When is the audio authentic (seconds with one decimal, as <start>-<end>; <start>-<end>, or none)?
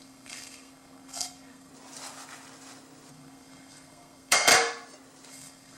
1.7-3.1; 4.5-5.3